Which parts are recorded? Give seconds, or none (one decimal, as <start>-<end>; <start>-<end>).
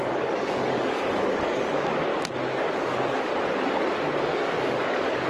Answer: 2.1-2.6; 3.3-4.2